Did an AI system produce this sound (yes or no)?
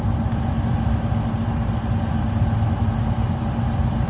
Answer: no